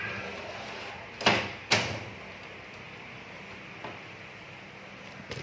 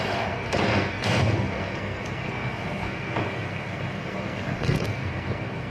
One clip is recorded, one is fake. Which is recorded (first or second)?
first